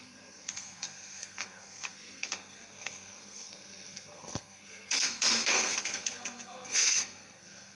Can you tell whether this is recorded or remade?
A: remade